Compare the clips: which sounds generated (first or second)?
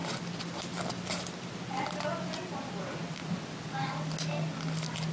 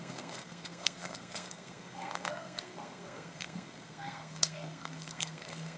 second